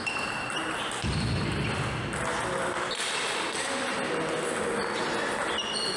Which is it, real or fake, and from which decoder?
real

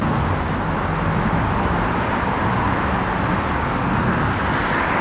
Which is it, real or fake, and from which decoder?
real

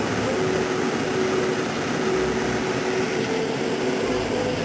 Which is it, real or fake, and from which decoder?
fake, vocoder, BigVGAN v2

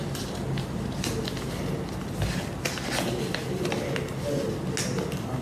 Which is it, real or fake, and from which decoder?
real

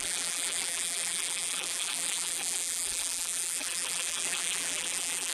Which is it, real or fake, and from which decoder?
fake, vocoder, BigVGAN v2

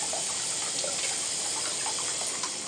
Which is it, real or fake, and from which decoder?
fake, vocoder, BigVGAN v2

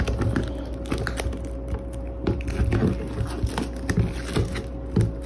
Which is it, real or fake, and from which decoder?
real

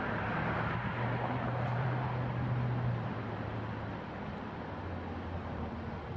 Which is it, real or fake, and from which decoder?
fake, vocoder, BigVGAN v2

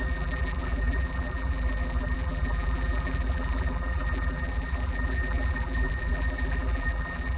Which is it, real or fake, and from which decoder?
fake, vocoder, BigVGAN v2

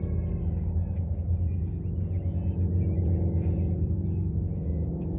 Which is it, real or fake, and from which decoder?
real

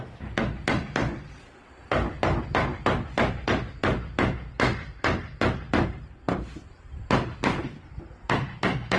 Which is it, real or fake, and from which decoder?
fake, vocoder, BigVGAN v2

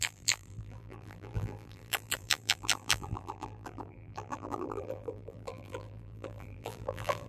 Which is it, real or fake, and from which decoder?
fake, vocoder, BigVGAN v2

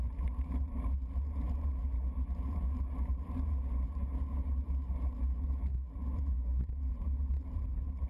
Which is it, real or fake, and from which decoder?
fake, vocoder, BigVGAN v2